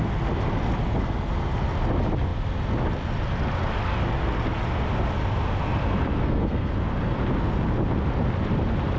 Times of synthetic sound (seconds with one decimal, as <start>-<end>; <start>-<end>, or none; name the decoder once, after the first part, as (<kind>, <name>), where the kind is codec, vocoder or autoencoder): 6.2-6.7 (codec, SNAC)